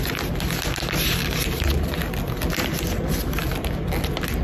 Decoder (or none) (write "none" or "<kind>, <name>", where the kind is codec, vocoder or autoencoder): vocoder, BigVGAN v2